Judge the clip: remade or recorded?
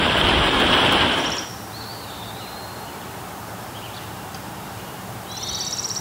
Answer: remade